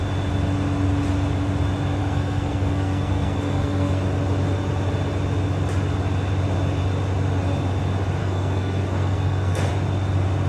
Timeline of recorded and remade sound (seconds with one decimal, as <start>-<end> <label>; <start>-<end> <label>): 0.0-2.0 recorded; 2.0-4.0 remade; 4.0-8.2 recorded; 8.2-9.7 remade; 9.7-10.5 recorded